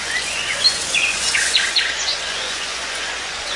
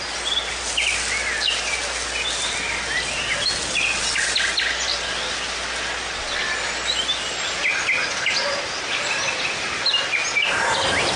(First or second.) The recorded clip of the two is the second